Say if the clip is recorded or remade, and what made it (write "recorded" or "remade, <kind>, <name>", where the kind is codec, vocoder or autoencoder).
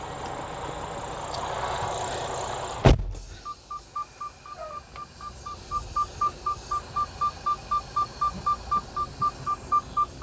recorded